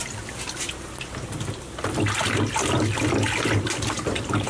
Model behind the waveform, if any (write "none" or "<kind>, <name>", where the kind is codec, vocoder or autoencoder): none